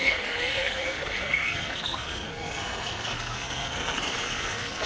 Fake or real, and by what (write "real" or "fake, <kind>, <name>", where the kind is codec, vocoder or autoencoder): fake, codec, SNAC